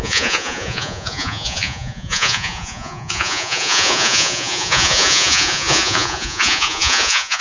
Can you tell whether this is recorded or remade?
remade